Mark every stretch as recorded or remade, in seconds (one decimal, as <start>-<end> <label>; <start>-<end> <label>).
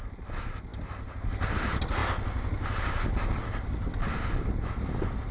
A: 0.0-5.3 recorded